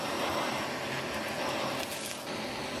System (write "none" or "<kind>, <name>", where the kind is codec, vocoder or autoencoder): none